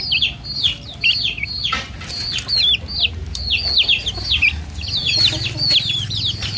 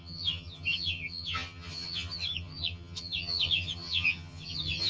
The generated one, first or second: second